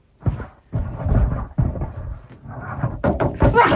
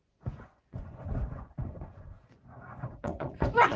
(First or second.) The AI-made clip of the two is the second